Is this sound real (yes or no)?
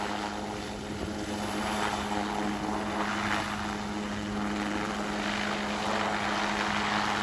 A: yes